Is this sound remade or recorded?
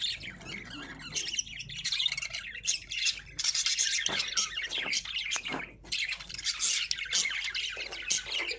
recorded